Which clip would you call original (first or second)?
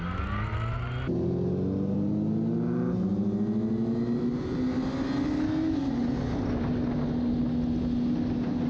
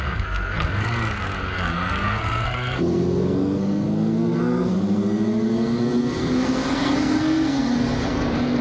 first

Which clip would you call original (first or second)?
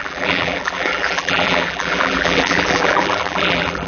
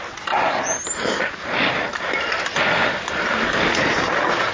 second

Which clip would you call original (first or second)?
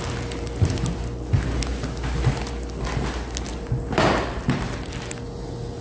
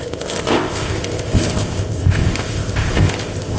first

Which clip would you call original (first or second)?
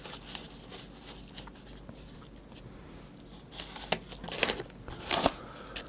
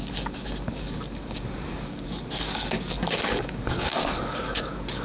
first